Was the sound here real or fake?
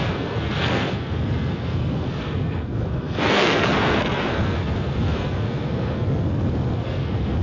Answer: fake